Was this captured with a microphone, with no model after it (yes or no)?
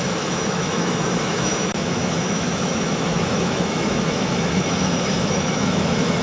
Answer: no